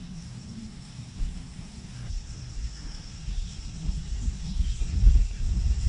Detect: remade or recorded remade